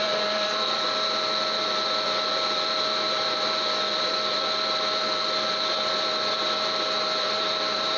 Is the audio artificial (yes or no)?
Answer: yes